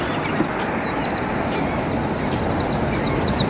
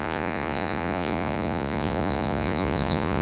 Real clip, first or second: first